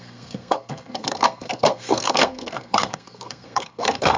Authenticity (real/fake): fake